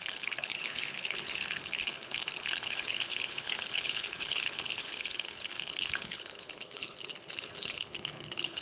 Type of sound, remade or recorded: remade